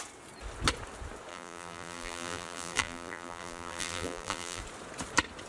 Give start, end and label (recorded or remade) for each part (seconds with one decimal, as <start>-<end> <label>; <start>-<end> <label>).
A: 0.0-1.3 recorded; 1.3-4.6 remade; 4.6-5.5 recorded

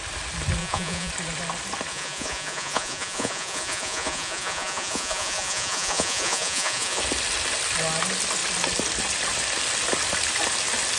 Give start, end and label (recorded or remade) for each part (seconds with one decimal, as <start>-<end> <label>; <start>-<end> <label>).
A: 0.0-0.6 recorded; 0.6-1.1 remade; 1.1-1.9 recorded; 1.9-7.0 remade; 7.0-11.0 recorded

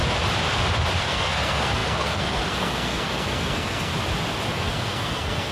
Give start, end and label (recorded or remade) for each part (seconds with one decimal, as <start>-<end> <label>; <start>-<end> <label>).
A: 0.0-1.0 recorded; 1.0-3.9 remade; 3.9-4.5 recorded; 4.5-5.5 remade

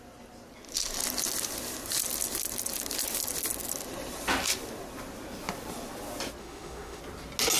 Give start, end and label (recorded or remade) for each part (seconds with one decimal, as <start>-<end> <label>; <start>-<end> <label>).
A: 0.0-6.4 recorded; 6.4-7.0 remade; 7.0-7.6 recorded